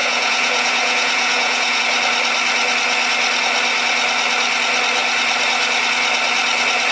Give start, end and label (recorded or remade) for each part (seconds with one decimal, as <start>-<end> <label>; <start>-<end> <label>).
0.0-1.8 remade; 1.8-6.9 recorded